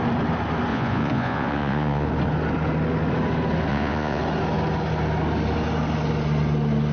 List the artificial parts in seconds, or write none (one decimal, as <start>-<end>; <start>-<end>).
0.7-2.1; 3.7-4.2